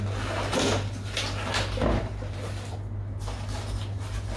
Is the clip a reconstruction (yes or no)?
no